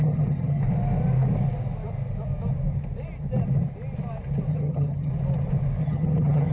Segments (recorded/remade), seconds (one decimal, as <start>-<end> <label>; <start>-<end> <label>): 0.0-0.6 remade; 0.6-4.5 recorded; 4.5-5.1 remade; 5.1-5.8 recorded; 5.8-6.5 remade